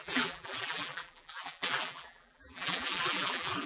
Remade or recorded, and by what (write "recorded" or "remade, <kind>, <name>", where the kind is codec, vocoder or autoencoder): remade, vocoder, BigVGAN v2